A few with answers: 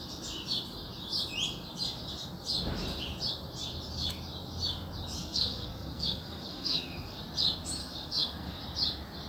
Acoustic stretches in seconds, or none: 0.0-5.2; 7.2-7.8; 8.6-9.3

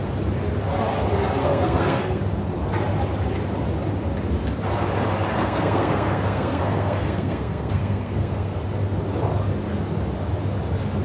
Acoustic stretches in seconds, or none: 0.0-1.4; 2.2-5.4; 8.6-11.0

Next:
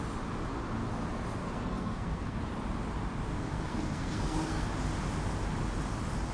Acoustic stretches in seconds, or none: 0.0-1.4; 2.4-3.3; 4.7-6.3